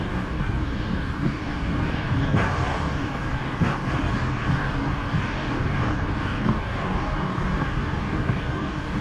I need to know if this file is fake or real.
fake